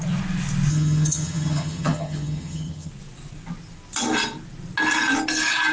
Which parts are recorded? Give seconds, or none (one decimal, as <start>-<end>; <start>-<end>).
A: 0.0-0.7; 2.9-5.7